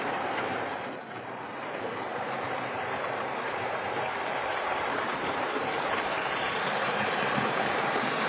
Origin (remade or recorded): remade